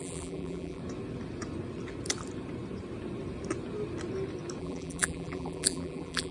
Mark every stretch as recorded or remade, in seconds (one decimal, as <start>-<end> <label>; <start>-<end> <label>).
0.0-0.8 remade; 0.8-4.6 recorded; 4.6-6.3 remade